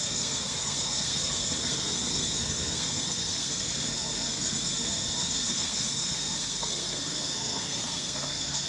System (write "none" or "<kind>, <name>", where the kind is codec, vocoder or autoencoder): codec, SNAC